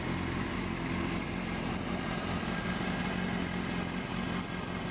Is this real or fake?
real